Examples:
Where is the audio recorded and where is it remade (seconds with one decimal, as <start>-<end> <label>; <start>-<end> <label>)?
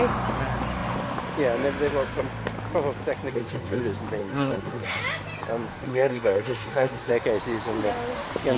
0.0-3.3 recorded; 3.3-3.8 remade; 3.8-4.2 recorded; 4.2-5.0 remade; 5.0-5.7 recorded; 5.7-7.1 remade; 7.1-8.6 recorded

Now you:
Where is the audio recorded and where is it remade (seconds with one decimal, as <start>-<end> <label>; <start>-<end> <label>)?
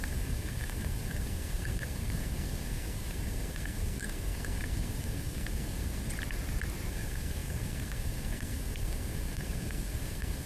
0.0-6.1 remade; 6.1-6.9 recorded; 6.9-10.5 remade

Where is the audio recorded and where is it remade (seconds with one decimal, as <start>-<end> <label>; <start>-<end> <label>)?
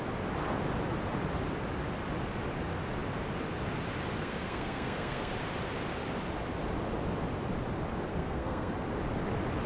0.0-4.2 recorded; 4.2-5.3 remade; 5.3-8.1 recorded; 8.1-8.7 remade; 8.7-9.7 recorded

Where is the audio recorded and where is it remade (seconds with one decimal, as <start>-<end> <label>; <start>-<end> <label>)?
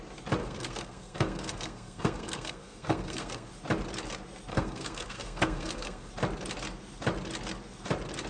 0.0-0.4 recorded; 0.4-3.5 remade; 3.5-4.5 recorded; 4.5-6.1 remade; 6.1-8.3 recorded